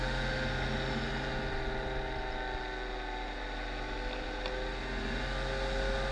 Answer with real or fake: real